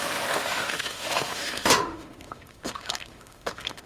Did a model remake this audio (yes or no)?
yes